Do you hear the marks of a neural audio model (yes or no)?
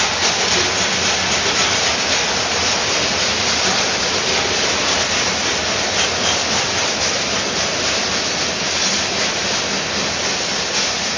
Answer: no